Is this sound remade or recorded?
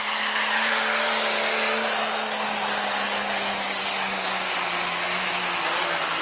recorded